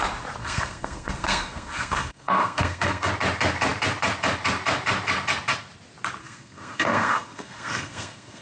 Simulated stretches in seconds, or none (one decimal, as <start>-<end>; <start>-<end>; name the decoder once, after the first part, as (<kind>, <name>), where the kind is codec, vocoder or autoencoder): 0.4-3.1 (codec, SNAC); 6.2-8.4